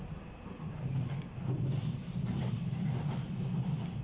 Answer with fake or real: real